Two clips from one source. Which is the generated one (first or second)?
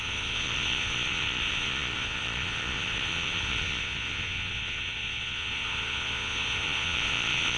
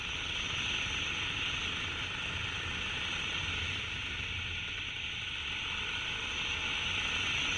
first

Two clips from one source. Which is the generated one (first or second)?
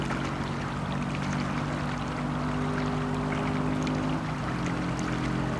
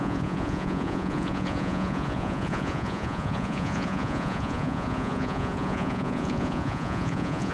second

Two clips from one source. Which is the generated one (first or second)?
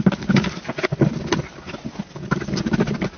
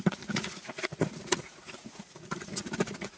second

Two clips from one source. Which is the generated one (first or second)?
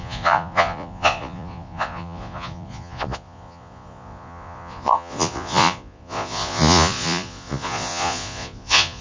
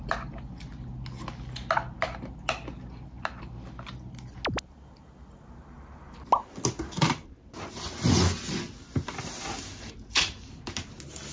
first